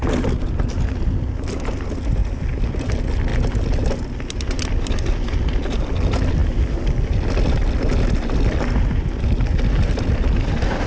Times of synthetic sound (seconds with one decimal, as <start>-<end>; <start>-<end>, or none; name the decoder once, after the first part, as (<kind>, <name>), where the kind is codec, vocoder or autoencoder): none